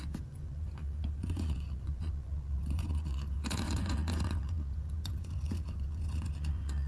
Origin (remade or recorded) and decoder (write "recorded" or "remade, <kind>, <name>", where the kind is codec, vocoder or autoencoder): remade, vocoder, Vocos